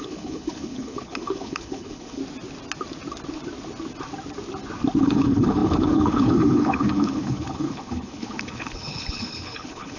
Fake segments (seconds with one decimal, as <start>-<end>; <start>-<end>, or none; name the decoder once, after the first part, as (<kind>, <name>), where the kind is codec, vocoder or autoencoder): 0.0-2.2 (codec, HILCodec); 5.0-10.0